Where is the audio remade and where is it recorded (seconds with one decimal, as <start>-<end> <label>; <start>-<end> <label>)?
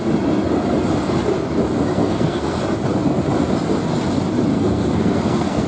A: 0.0-1.9 recorded; 1.9-2.6 remade; 2.6-4.5 recorded; 4.5-5.7 remade